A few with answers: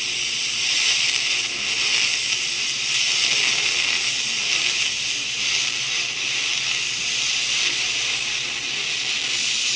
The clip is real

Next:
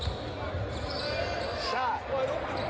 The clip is real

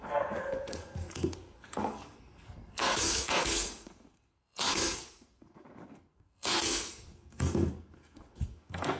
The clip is fake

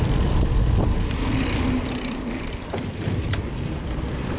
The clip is fake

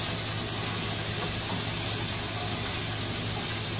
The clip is real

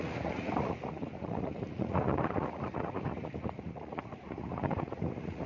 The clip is fake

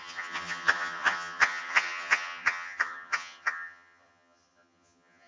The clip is fake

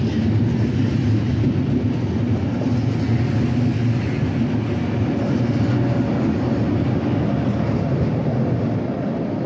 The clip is real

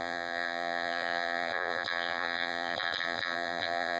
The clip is fake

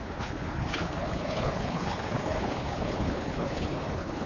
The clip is fake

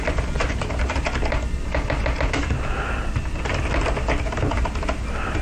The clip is real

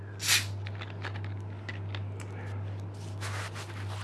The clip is real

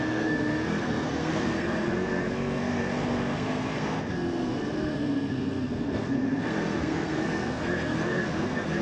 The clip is fake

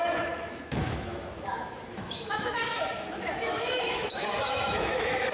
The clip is fake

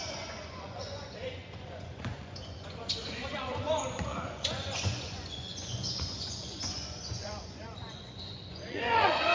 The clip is fake